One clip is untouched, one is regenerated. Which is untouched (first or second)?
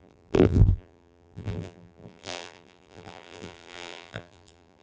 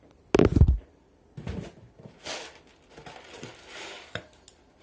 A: second